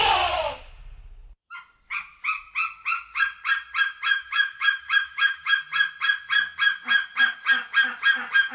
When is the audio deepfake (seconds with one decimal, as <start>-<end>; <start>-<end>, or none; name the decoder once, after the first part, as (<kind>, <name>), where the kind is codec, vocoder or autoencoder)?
4.1-5.6 (autoencoder, DAC-VAE)